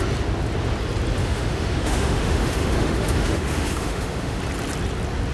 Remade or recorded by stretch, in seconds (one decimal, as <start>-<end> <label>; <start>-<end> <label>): 0.0-1.2 recorded; 1.2-4.4 remade; 4.4-5.3 recorded